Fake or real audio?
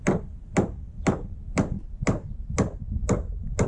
real